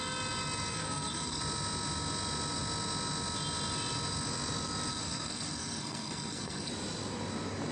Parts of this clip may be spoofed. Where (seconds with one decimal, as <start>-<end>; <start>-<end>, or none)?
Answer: 0.7-1.4; 4.9-6.7